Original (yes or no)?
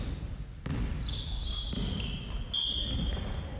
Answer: yes